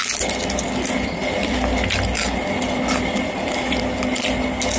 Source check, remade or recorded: recorded